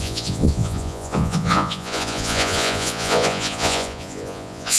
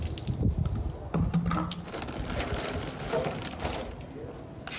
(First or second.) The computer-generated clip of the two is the first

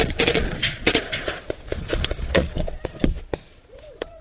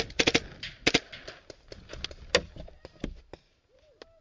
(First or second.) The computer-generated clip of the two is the first